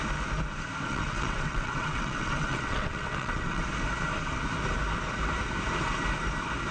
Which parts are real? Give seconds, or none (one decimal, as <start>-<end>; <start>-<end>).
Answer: 0.0-0.9; 3.6-6.7